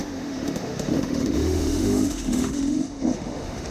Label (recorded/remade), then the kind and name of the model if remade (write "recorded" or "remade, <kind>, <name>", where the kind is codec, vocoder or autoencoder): remade, autoencoder, DAC-VAE